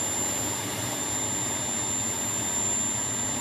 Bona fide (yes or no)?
yes